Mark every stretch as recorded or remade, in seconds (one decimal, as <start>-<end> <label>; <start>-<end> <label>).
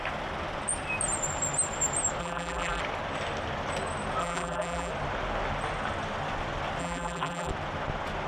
0.0-2.2 recorded; 2.2-2.8 remade; 2.8-4.2 recorded; 4.2-4.9 remade; 4.9-6.8 recorded; 6.8-7.5 remade; 7.5-8.3 recorded